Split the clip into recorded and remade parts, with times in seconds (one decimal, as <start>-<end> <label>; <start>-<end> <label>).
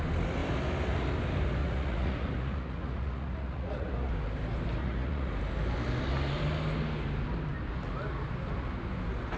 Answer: 0.0-1.6 recorded; 1.6-4.1 remade; 4.1-4.8 recorded; 4.8-5.3 remade; 5.3-9.4 recorded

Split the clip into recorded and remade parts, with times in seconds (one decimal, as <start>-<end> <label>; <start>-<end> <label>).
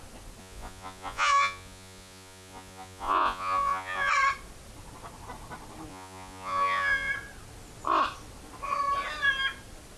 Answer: 0.0-0.4 recorded; 0.4-4.1 remade; 4.1-5.9 recorded; 5.9-7.1 remade; 7.1-10.0 recorded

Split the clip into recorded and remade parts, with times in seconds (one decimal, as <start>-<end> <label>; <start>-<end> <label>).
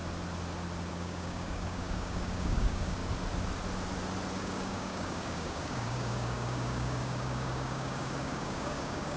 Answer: 0.0-0.9 recorded; 0.9-3.0 remade; 3.0-4.4 recorded; 4.4-9.2 remade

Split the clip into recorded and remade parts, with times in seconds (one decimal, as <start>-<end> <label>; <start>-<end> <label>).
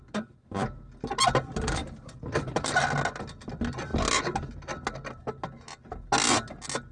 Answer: 0.0-6.9 recorded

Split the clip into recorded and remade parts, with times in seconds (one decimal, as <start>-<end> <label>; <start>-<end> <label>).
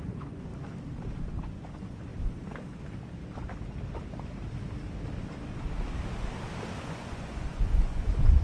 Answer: 0.0-0.5 remade; 0.5-1.1 recorded; 1.1-2.1 remade; 2.1-6.8 recorded; 6.8-8.4 remade